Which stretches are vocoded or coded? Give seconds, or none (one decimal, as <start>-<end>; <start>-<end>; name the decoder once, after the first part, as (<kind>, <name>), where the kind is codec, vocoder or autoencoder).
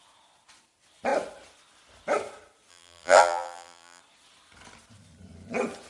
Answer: 2.7-4.0 (vocoder, BigVGAN v2)